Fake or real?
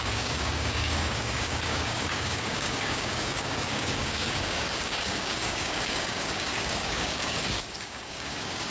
fake